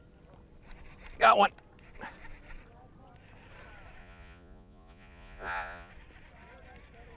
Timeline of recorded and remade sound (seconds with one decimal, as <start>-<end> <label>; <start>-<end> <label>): 0.0-4.0 recorded; 4.0-5.9 remade; 5.9-7.2 recorded